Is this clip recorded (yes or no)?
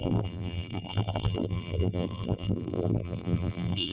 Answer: no